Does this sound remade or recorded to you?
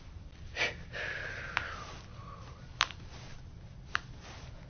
recorded